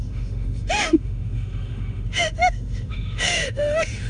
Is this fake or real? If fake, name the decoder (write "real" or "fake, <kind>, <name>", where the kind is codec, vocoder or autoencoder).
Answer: fake, autoencoder, DAC-VAE